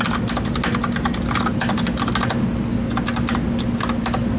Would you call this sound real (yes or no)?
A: yes